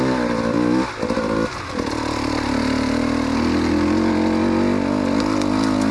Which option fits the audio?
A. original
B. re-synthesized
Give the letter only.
A